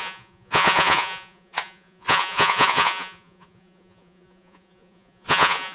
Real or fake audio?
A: fake